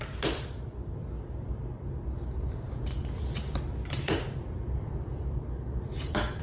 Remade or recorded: remade